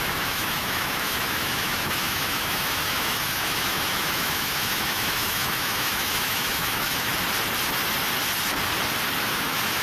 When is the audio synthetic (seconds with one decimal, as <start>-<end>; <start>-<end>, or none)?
0.0-7.1; 9.2-9.8